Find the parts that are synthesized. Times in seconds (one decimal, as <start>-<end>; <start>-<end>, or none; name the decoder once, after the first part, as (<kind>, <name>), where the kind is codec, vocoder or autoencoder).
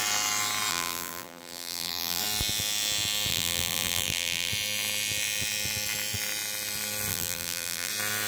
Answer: 0.7-2.2 (vocoder, BigVGAN v2); 3.3-4.5; 7.1-7.9